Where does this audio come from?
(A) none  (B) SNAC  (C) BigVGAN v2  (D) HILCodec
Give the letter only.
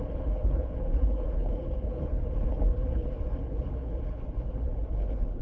D